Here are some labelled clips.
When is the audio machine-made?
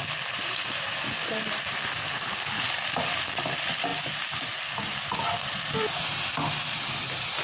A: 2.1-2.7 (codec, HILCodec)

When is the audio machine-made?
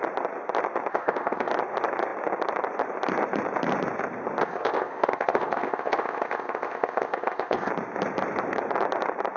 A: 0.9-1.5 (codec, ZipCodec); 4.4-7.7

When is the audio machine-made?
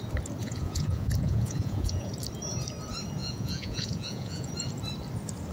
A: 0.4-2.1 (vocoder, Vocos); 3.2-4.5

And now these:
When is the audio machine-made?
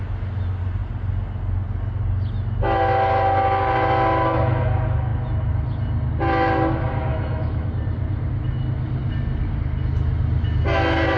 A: 7.1-7.7 (autoencoder, DAC-VAE)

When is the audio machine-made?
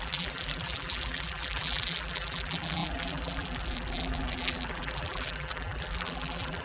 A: 0.0-6.6 (vocoder, BigVGAN v2)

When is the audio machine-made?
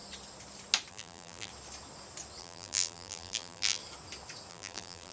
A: 0.9-1.5 (vocoder, BigVGAN v2); 2.4-3.8; 4.5-5.1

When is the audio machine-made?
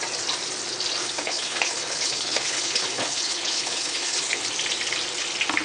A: 1.0-4.4 (codec, HILCodec)